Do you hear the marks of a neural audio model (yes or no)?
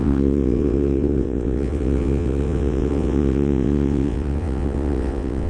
yes